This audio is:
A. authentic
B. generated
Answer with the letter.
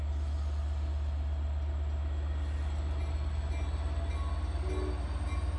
A